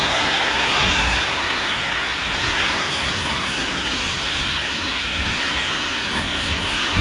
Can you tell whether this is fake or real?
fake